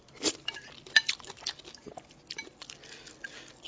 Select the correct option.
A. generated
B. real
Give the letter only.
B